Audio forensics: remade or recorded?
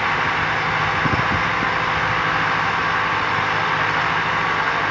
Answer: recorded